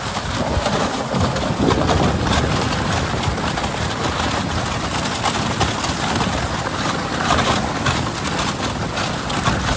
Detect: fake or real real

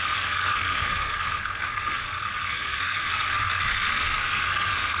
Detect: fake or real fake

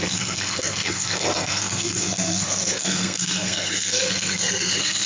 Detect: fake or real fake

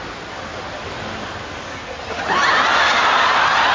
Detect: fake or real real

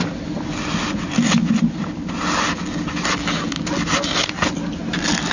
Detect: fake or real real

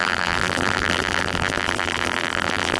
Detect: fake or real fake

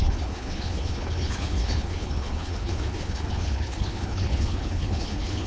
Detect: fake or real fake